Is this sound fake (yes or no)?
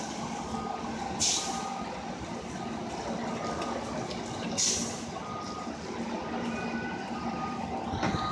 no